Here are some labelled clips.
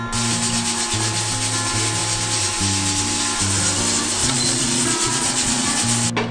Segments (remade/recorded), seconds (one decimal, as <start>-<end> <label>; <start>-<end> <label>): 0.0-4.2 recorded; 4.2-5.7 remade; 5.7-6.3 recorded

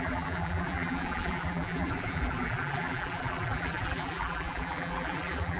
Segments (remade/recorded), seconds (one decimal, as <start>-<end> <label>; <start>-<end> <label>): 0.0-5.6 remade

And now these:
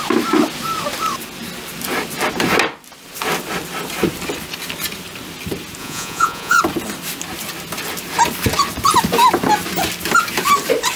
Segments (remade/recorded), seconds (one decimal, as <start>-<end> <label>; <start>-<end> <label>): 0.0-5.8 recorded; 5.8-6.6 remade; 6.6-11.0 recorded